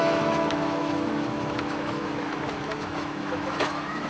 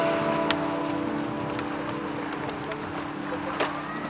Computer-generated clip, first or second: first